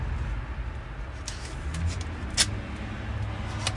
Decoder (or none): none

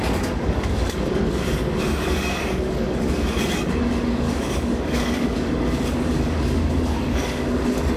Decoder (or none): codec, DAC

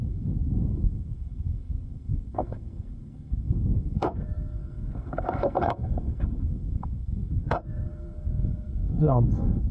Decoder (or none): codec, SNAC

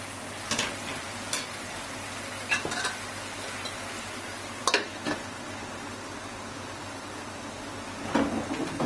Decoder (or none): none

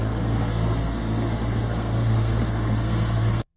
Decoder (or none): codec, SNAC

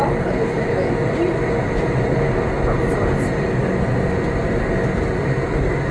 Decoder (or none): none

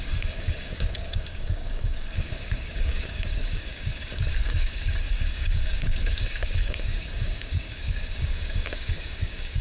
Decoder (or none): codec, DAC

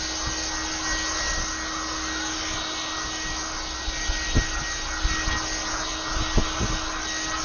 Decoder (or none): none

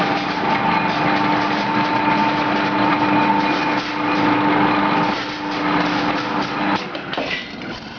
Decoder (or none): vocoder, BigVGAN v2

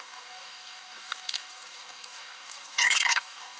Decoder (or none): codec, DAC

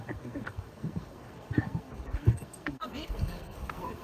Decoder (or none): codec, SNAC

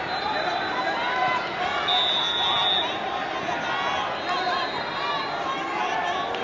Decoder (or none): none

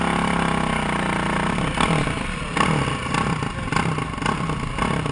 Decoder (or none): none